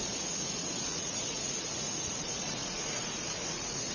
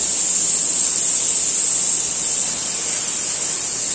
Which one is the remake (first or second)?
first